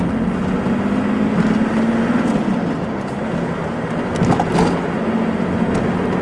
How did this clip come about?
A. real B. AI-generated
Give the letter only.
A